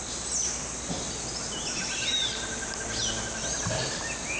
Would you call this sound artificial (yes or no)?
no